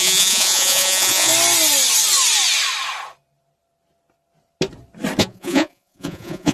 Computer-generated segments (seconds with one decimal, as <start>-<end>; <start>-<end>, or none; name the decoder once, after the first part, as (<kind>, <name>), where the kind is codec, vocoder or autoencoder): 0.0-1.3 (vocoder, Vocos); 5.2-6.5